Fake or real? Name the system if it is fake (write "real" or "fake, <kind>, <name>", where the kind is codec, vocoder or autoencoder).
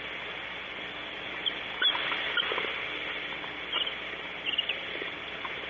real